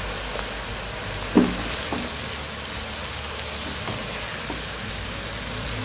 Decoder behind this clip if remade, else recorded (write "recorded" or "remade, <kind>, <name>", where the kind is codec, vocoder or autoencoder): recorded